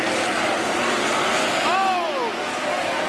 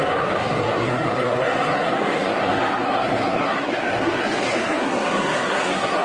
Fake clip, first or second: second